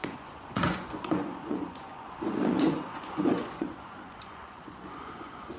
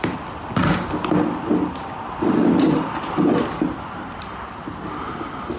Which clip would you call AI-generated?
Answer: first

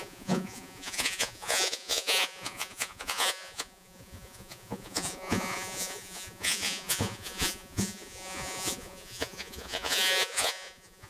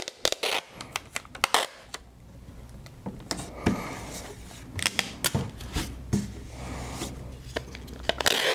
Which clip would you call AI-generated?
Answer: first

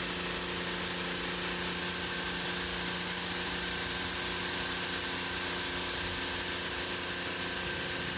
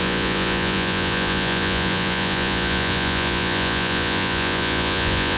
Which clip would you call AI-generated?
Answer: second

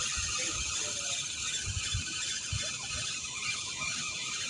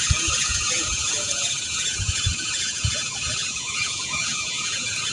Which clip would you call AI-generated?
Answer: second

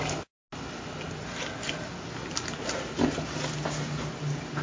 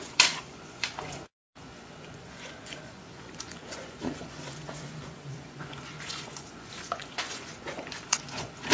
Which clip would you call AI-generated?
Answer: second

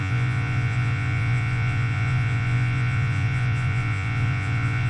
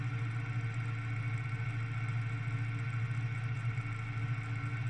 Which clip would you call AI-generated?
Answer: first